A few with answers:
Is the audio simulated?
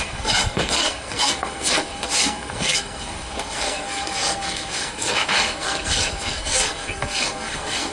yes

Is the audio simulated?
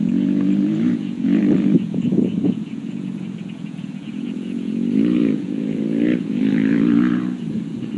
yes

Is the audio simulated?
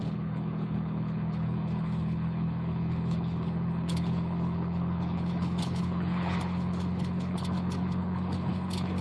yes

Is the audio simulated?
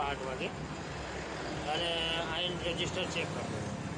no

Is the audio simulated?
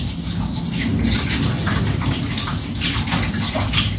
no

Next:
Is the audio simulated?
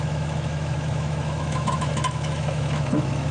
yes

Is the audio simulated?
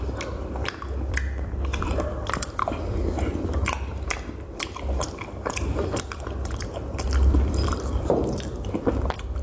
yes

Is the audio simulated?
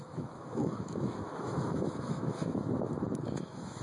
yes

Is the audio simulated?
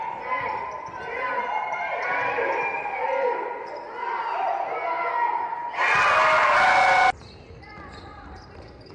no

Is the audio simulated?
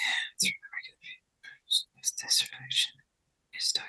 no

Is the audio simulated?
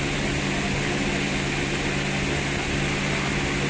no